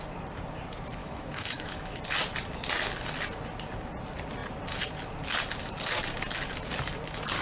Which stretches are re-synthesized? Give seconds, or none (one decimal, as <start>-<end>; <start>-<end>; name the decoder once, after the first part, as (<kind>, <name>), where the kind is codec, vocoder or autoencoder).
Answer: 1.0-2.0 (autoencoder, DAC-VAE)